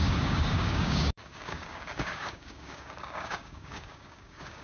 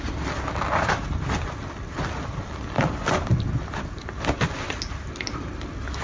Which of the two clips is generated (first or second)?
first